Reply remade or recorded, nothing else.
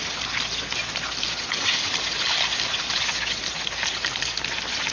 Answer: recorded